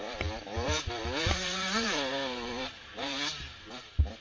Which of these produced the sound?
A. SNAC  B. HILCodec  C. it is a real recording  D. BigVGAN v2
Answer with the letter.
D